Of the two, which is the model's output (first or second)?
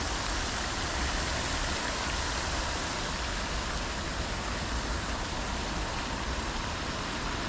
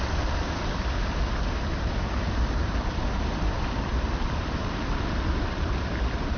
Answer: second